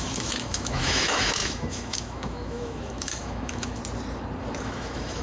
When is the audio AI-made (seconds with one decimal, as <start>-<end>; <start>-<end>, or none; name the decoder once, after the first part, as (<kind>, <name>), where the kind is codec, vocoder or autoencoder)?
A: 0.0-3.8 (autoencoder, DAC-VAE); 4.6-5.2